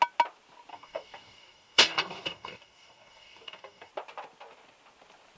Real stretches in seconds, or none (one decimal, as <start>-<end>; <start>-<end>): 0.0-0.7; 3.9-5.4